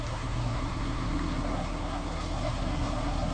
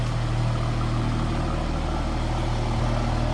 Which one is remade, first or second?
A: first